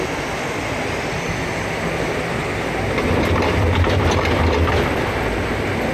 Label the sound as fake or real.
real